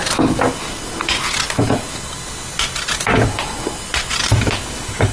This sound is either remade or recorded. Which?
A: recorded